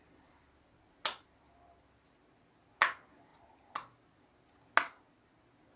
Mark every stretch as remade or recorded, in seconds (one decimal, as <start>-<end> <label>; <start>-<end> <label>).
0.0-5.8 recorded